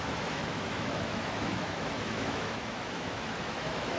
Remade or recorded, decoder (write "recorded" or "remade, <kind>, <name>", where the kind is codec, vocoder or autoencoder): remade, autoencoder, DAC-VAE